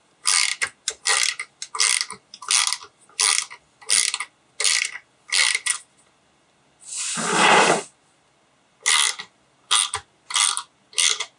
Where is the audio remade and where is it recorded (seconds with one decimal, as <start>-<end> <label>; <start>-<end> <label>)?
0.0-11.4 recorded